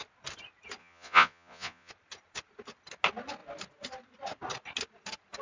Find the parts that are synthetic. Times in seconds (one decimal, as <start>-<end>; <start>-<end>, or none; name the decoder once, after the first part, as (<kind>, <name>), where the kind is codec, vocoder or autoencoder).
0.8-1.9 (vocoder, Vocos)